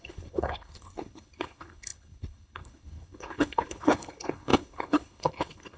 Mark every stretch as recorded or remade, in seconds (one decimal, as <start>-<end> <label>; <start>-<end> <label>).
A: 0.0-5.8 remade